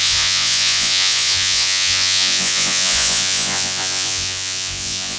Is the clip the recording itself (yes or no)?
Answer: no